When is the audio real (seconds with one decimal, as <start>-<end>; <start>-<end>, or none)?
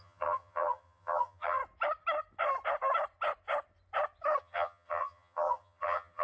1.6-4.4